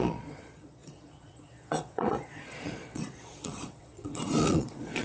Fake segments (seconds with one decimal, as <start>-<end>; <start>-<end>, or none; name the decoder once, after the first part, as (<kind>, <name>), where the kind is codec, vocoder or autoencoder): 0.0-5.0 (vocoder, Vocos)